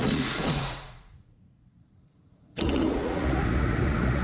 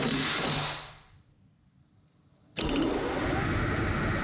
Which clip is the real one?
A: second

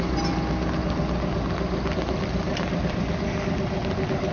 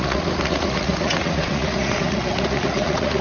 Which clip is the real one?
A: first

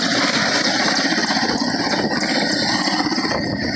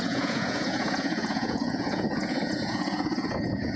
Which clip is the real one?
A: first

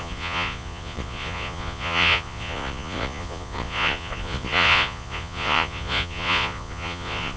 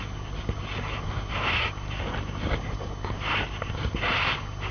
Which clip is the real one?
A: second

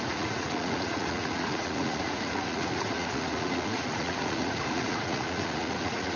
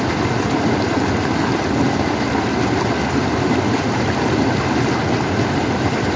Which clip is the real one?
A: second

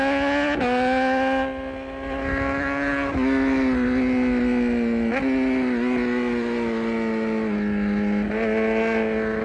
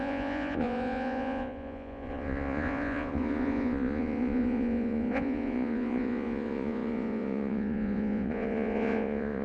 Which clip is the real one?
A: first